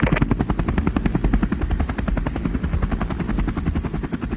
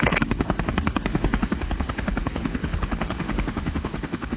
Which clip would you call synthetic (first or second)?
second